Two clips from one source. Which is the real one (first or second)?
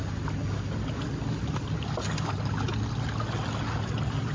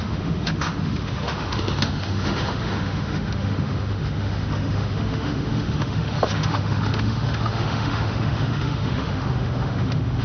first